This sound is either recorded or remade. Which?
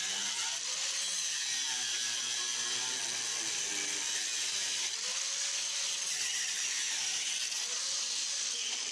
recorded